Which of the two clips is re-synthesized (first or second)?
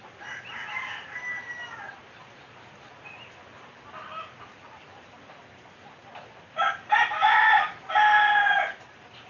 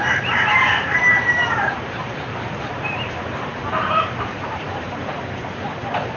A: second